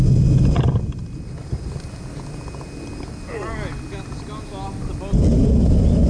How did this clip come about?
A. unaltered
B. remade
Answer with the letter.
A